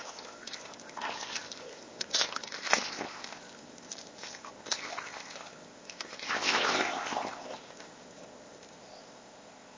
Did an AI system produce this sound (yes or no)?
yes